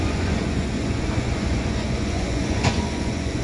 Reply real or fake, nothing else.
fake